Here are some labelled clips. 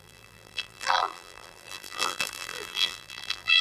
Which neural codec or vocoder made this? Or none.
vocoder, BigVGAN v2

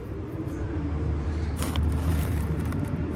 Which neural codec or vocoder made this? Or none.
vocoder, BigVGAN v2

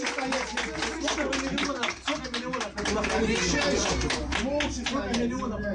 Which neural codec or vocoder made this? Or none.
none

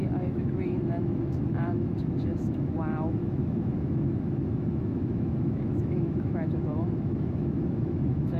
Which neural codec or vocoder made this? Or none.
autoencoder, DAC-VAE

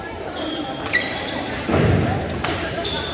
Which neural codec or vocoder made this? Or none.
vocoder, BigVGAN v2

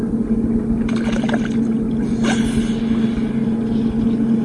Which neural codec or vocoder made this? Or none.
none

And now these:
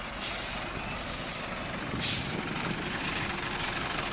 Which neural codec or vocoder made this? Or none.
none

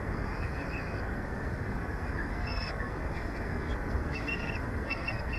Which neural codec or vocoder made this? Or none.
codec, SNAC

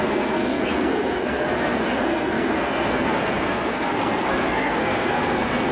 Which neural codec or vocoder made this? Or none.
codec, SNAC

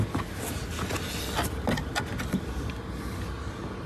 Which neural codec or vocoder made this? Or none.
none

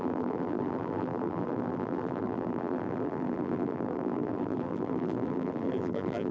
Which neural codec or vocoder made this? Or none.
vocoder, BigVGAN v2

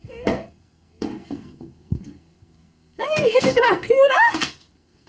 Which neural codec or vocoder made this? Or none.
codec, SNAC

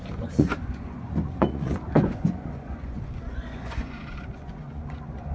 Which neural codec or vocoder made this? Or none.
vocoder, Vocos